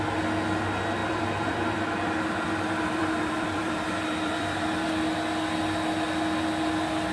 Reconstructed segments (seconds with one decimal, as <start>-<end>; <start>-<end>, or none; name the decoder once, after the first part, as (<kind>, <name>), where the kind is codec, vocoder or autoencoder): 1.0-4.9 (vocoder, BigVGAN v2)